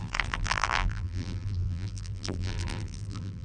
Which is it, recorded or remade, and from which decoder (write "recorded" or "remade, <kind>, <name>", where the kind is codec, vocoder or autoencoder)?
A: remade, vocoder, BigVGAN v2